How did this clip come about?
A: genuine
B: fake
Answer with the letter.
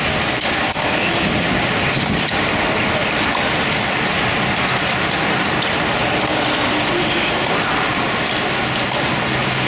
A